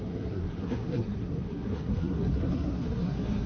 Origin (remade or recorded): remade